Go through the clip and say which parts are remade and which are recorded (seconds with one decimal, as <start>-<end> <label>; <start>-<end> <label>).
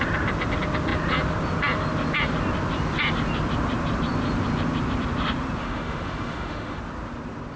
0.0-5.6 recorded; 5.6-6.8 remade; 6.8-7.6 recorded